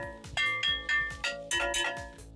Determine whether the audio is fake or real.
real